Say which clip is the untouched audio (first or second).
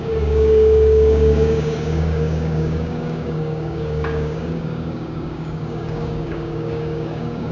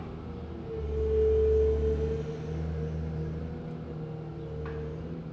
second